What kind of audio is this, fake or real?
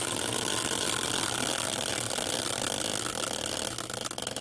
real